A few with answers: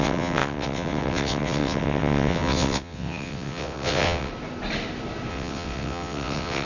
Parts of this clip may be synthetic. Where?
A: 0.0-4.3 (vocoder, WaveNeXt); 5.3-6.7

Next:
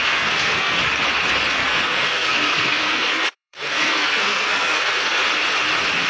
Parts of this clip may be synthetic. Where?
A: 0.0-0.8 (codec, SNAC); 1.5-5.2